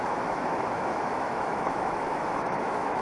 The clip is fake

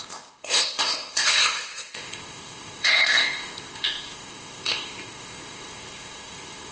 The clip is fake